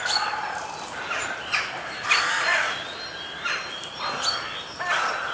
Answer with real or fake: real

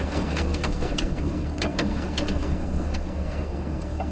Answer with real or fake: fake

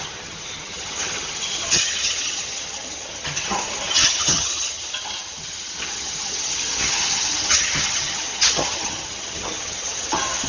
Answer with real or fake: fake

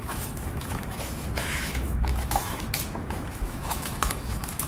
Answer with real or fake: fake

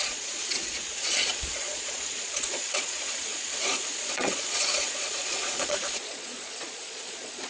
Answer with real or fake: fake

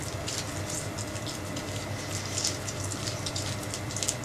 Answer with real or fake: real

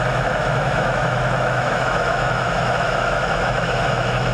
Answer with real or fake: fake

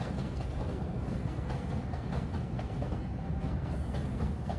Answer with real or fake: fake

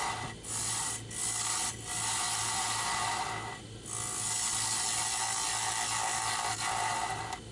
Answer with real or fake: real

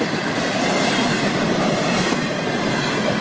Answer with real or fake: real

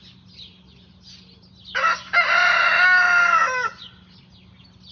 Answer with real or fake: real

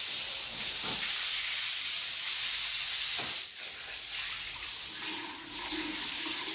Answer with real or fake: real